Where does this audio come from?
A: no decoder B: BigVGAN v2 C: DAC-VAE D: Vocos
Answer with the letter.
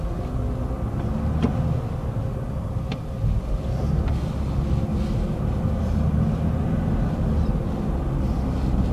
A